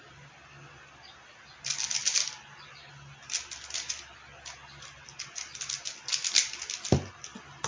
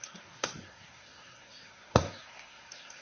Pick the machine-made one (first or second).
second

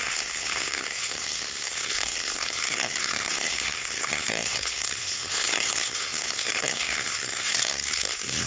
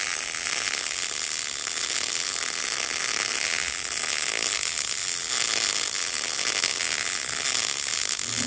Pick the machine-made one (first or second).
first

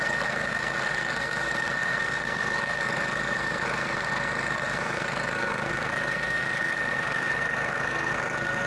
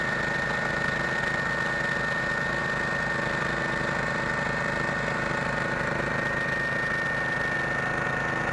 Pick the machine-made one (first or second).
first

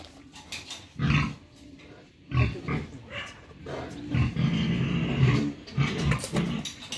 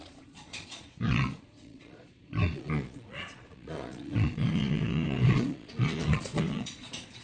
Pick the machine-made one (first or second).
second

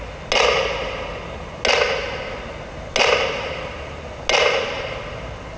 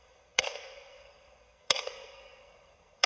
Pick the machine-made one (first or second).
second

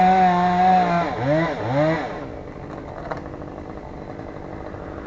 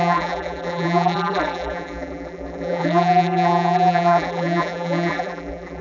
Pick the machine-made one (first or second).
second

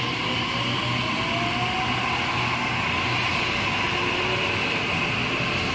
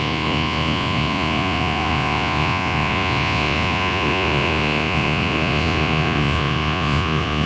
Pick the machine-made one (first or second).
second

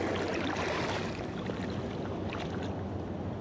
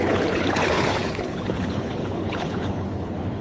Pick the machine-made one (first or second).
second